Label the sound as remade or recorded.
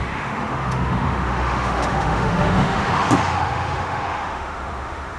remade